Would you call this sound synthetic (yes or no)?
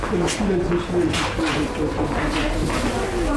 no